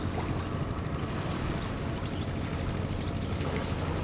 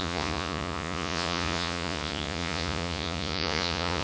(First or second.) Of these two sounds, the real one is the first